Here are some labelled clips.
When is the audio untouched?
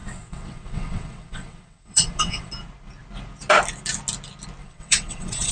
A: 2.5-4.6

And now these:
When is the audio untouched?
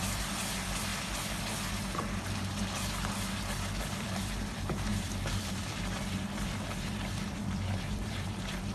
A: 0.9-3.8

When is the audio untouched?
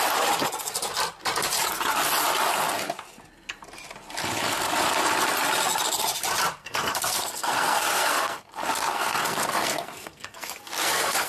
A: 0.0-6.6